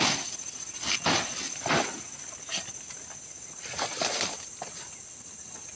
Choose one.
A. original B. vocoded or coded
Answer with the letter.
A